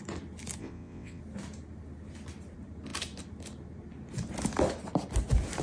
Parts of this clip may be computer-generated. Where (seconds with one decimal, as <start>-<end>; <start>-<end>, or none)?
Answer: 0.6-1.2